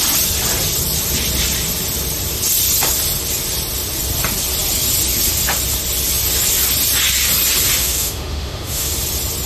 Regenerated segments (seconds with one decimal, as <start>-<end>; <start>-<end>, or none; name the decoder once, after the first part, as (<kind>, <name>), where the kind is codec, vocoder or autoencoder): 7.8-8.9 (autoencoder, DAC-VAE)